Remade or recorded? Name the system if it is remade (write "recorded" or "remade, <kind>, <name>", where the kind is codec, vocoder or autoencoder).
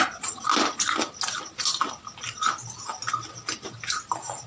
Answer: recorded